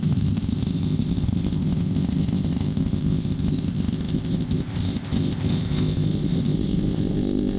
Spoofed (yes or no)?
yes